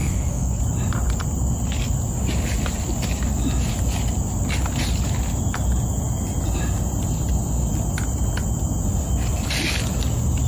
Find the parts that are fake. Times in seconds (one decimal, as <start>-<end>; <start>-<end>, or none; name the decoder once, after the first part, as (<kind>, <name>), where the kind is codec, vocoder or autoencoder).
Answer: 0.0-0.6 (codec, SNAC)